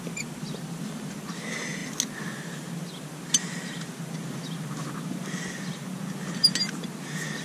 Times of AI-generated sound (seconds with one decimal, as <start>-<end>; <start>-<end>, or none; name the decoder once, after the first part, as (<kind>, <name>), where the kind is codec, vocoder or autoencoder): none